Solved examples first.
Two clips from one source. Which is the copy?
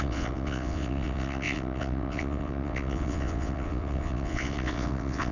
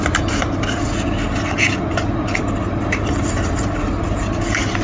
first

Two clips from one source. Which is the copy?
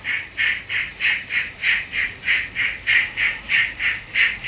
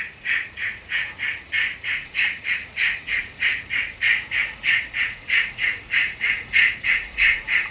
second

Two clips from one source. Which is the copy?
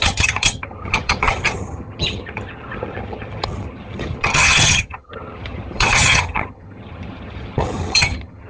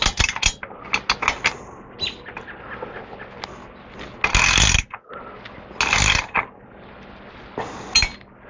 first